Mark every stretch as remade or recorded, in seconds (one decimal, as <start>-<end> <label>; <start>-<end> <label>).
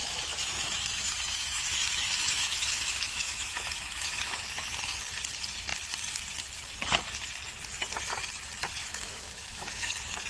0.0-4.8 remade; 4.8-8.8 recorded; 8.8-9.9 remade; 9.9-10.3 recorded